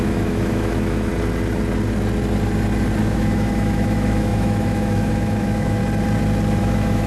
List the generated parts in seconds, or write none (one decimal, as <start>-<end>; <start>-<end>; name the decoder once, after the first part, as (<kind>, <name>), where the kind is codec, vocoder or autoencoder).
0.0-1.1 (autoencoder, DAC-VAE); 3.0-5.8; 6.6-7.1